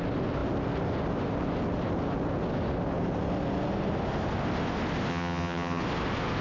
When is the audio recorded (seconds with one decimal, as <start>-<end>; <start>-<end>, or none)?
0.0-5.1; 5.8-6.4